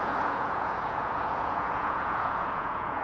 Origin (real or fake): fake